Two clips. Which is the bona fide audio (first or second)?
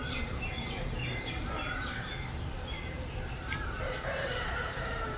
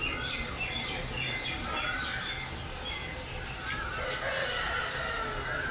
second